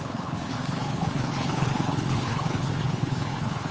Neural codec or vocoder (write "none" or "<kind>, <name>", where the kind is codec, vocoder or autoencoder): codec, HILCodec